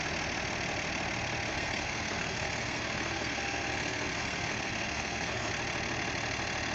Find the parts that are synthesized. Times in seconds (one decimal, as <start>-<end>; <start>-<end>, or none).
1.5-5.5